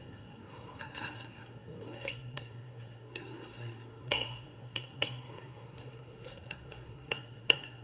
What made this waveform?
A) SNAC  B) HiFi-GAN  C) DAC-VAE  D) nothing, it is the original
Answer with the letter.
A